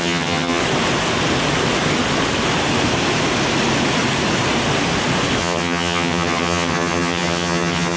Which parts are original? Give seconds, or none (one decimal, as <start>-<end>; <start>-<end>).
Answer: 0.6-5.4